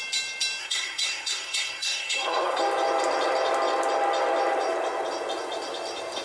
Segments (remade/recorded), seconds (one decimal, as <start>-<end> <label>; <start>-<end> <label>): 0.0-0.6 recorded; 0.6-2.6 remade; 2.6-6.2 recorded